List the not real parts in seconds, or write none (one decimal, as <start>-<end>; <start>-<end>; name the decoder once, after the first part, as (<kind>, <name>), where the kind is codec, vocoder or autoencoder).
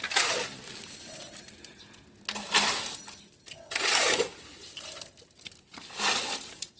none